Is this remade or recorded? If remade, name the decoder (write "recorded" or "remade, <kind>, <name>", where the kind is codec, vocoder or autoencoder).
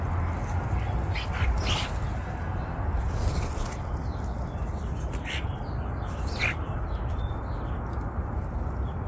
recorded